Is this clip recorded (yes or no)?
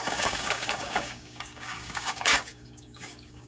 no